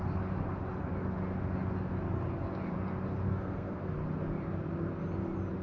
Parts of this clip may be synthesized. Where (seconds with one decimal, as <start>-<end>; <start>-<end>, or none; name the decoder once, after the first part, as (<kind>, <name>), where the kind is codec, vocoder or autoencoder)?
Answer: 3.3-3.9 (codec, SNAC)